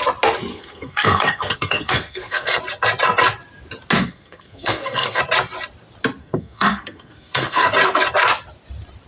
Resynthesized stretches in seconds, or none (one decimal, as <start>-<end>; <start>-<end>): 0.5-2.6; 4.0-5.2; 6.2-7.7